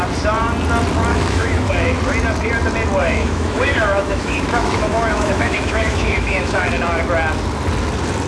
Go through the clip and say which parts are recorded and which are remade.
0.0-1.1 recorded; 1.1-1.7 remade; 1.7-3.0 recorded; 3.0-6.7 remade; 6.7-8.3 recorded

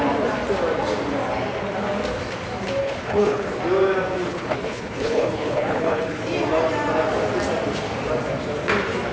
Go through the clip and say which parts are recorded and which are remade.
0.0-2.8 recorded; 2.8-3.6 remade; 3.6-4.3 recorded; 4.3-6.2 remade; 6.2-9.1 recorded

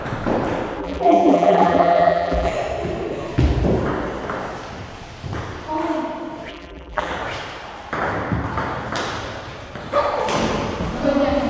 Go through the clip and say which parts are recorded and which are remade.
0.0-0.8 recorded; 0.8-2.5 remade; 2.5-6.5 recorded; 6.5-7.1 remade; 7.1-11.5 recorded

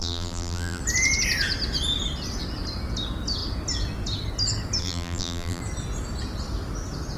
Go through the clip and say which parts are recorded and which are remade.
0.0-0.8 remade; 0.8-4.8 recorded; 4.8-5.6 remade; 5.6-7.2 recorded